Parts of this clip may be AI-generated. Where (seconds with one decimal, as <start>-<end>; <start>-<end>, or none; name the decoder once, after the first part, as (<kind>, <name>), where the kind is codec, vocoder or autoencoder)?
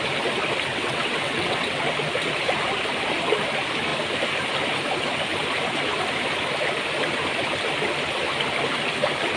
0.7-1.8 (vocoder, WaveNeXt)